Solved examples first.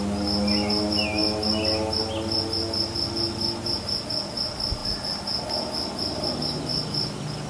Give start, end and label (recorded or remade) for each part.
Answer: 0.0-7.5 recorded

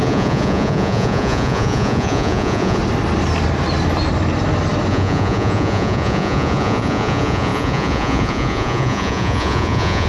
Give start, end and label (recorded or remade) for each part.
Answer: 0.0-2.8 remade; 2.8-4.9 recorded; 4.9-10.1 remade

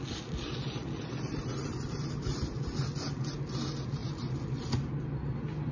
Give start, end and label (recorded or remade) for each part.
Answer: 0.0-1.3 recorded; 1.3-2.8 remade; 2.8-4.0 recorded; 4.0-4.7 remade; 4.7-5.7 recorded

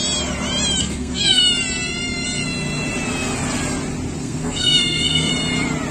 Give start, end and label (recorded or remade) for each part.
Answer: 0.0-0.8 recorded; 0.8-1.4 remade; 1.4-4.2 recorded; 4.2-5.3 remade; 5.3-5.9 recorded

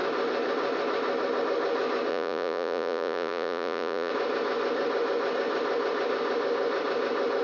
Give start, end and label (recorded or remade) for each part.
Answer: 0.0-2.1 recorded; 2.1-4.1 remade; 4.1-7.4 recorded

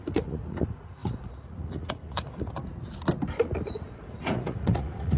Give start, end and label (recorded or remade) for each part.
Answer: 0.0-2.5 remade; 2.5-3.4 recorded; 3.4-5.2 remade

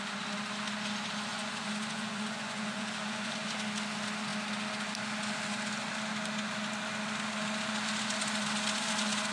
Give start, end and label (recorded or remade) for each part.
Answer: 0.0-1.3 recorded; 1.3-3.3 remade; 3.3-9.3 recorded

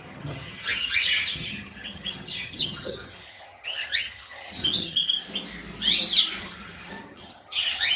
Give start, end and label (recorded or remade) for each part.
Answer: 0.0-5.2 remade; 5.2-6.4 recorded; 6.4-8.0 remade